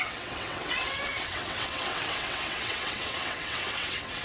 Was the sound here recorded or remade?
remade